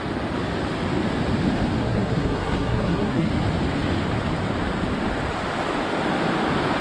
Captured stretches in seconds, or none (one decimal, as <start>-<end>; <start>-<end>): 0.0-1.8; 3.3-6.8